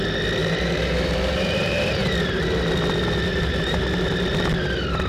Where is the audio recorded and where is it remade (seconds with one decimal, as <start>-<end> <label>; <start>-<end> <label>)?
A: 0.0-0.4 recorded; 0.4-2.5 remade; 2.5-3.3 recorded; 3.3-3.8 remade; 3.8-5.1 recorded